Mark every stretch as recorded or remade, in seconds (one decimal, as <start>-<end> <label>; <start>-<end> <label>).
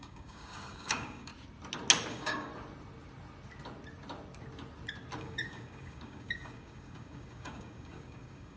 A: 0.0-1.3 remade; 1.3-2.1 recorded; 2.1-2.5 remade; 2.5-5.2 recorded; 5.2-8.6 remade